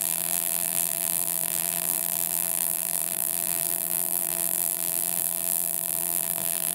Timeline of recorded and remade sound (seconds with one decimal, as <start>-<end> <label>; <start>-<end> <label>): 0.0-6.7 remade